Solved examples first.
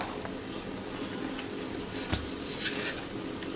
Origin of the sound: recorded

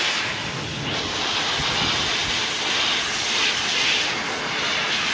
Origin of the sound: recorded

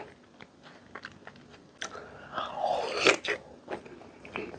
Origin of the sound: recorded